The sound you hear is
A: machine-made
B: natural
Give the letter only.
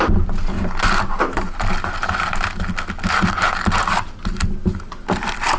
B